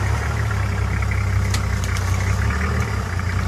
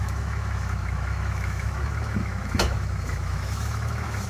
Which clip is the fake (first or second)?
second